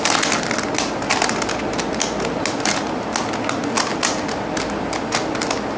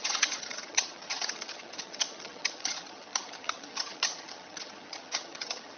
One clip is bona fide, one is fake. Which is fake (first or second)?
second